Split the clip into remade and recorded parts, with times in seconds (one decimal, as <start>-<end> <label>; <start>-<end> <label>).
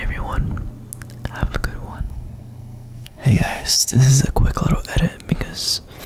0.0-1.9 recorded; 1.9-4.1 remade; 4.1-6.1 recorded